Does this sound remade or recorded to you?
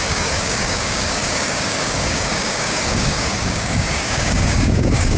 remade